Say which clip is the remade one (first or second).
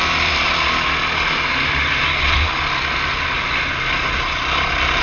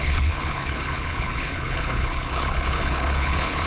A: second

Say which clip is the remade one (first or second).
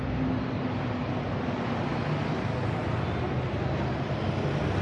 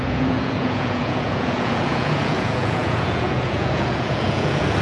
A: second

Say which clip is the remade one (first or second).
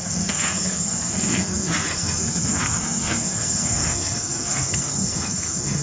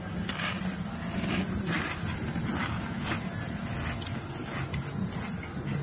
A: first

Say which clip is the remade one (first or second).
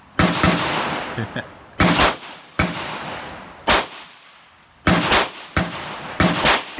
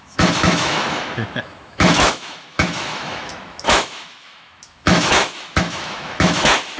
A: second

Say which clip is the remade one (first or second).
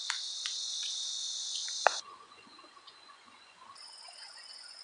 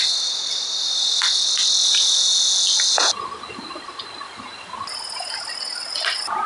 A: first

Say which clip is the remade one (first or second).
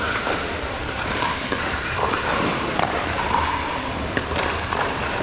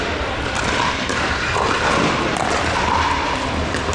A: first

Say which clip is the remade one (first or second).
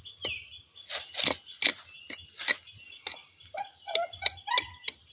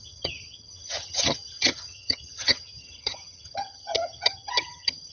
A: second